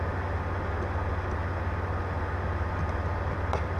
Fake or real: real